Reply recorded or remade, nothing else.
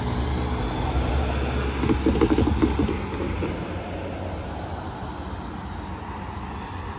recorded